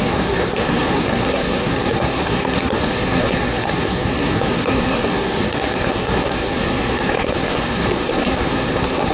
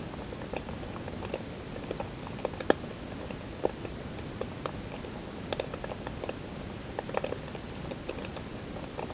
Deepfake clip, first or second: first